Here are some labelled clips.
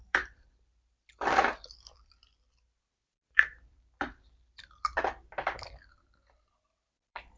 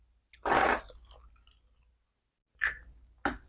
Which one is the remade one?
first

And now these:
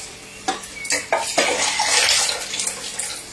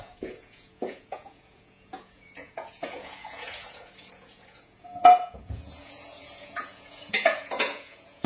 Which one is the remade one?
second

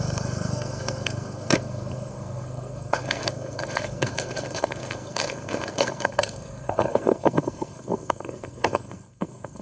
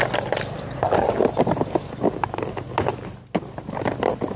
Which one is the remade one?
first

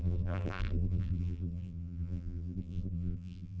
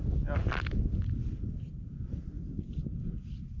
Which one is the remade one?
first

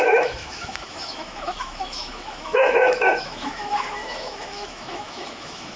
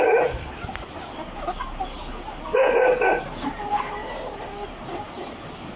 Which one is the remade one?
first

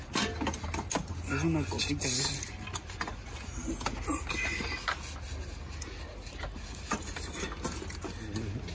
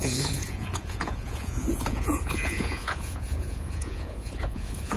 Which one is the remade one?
second